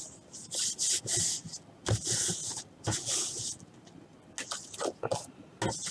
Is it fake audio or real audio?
real